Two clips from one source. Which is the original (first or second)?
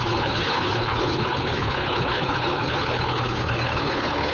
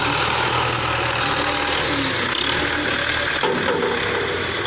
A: second